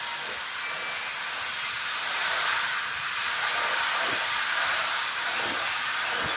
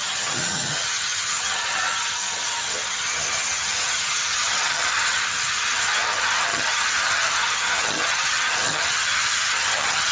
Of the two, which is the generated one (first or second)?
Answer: second